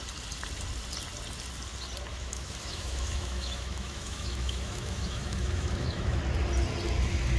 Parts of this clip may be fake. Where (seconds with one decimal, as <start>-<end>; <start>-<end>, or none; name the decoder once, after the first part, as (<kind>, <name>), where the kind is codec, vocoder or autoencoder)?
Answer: 2.1-6.2 (autoencoder, DAC-VAE)